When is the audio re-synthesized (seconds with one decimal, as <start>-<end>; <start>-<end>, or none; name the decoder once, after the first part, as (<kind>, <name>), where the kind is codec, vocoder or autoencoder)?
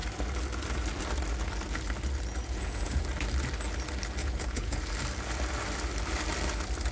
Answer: 2.3-3.0 (vocoder, Vocos); 4.2-4.9